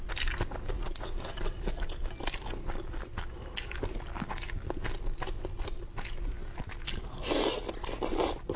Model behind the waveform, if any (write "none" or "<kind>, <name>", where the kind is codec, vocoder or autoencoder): none